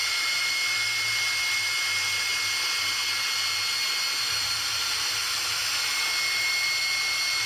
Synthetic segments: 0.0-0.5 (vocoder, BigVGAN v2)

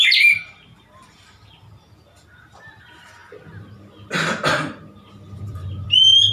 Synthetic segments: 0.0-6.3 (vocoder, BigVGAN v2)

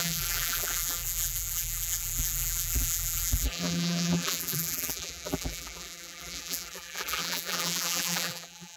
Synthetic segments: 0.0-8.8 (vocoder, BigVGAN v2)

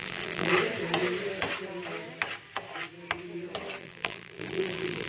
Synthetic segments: 0.0-0.5 (vocoder, BigVGAN v2); 3.8-5.1

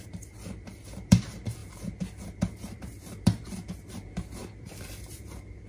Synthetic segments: 0.0-5.7 (vocoder, BigVGAN v2)

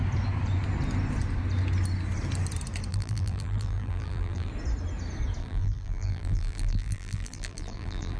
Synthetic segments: 2.9-4.5 (vocoder, BigVGAN v2); 5.4-8.2

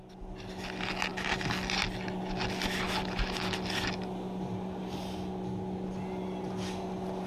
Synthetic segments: none